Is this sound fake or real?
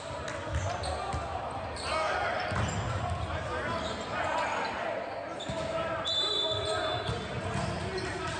real